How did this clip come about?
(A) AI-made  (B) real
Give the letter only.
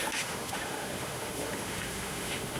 A